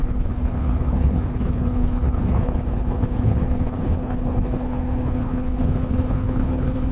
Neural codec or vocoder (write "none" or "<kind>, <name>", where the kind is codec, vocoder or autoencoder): codec, HILCodec